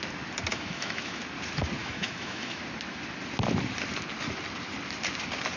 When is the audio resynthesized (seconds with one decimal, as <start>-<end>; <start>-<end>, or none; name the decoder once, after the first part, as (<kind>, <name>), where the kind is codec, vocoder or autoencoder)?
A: 0.5-1.2 (autoencoder, DAC-VAE); 1.8-2.6